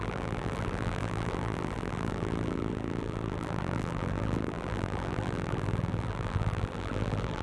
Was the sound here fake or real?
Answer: fake